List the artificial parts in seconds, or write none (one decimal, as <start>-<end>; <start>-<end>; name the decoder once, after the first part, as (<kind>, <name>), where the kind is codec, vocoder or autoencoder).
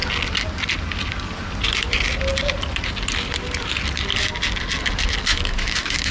5.3-6.1 (autoencoder, DAC-VAE)